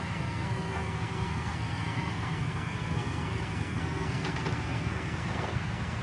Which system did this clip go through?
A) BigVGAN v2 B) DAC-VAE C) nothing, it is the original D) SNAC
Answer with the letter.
D